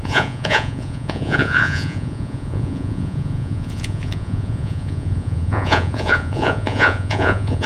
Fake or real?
fake